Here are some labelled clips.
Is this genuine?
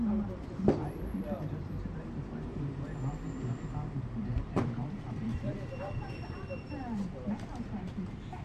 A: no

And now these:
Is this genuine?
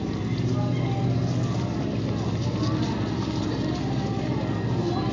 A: yes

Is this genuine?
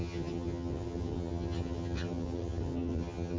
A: no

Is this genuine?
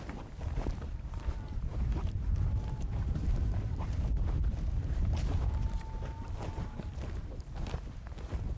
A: no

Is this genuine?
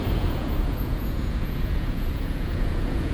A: no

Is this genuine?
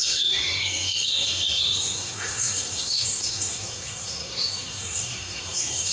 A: no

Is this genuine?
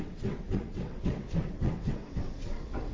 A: no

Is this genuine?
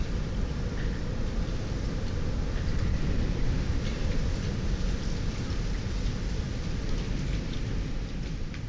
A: yes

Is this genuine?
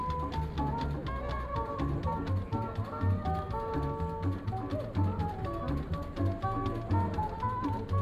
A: yes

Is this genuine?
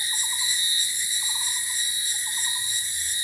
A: yes